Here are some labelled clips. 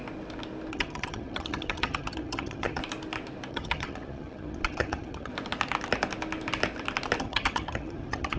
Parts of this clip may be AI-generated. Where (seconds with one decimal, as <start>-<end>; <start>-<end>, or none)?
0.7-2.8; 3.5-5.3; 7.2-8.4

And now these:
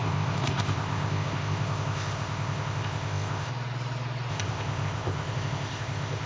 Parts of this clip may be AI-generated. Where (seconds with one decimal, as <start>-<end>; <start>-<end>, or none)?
0.0-3.5; 4.3-6.3

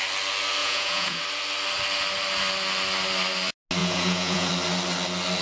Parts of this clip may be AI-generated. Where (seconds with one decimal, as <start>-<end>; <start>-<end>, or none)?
0.6-1.2; 3.8-4.5

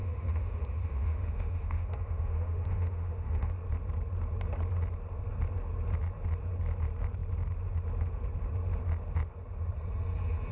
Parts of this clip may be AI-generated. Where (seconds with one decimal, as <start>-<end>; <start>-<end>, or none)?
0.0-3.5

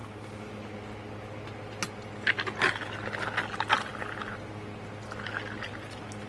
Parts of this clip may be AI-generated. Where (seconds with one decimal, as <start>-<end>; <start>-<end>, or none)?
none

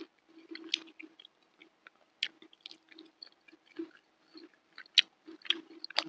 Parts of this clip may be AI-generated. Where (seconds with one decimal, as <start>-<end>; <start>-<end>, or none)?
none